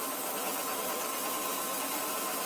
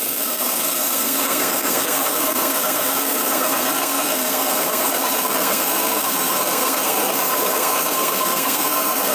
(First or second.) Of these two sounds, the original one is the first